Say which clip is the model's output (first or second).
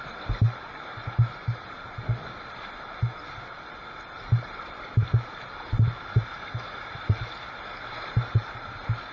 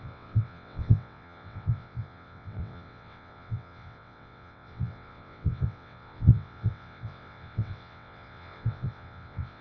second